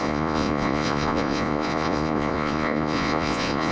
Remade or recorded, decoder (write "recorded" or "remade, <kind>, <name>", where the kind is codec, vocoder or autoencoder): remade, vocoder, Vocos